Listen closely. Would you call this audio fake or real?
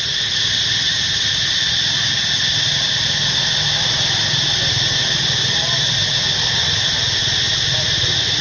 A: real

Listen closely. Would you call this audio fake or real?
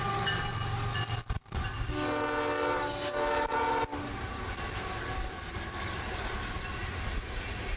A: real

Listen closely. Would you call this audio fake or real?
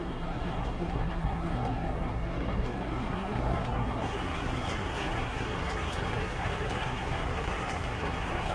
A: fake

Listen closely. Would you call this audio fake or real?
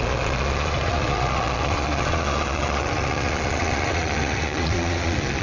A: fake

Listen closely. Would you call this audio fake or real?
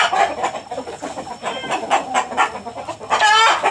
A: real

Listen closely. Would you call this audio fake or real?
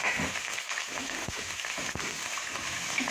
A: fake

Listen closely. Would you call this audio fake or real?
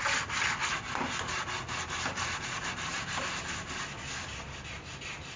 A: real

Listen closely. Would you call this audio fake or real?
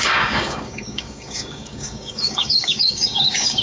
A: fake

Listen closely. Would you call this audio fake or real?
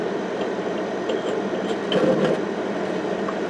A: fake